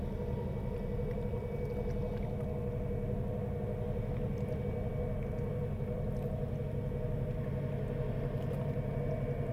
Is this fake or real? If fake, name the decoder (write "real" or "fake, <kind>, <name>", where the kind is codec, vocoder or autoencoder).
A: real